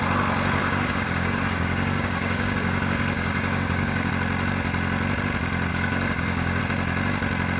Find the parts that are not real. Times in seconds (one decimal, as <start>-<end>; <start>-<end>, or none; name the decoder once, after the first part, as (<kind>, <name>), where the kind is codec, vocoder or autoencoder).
0.6-4.1 (codec, DAC); 5.7-6.6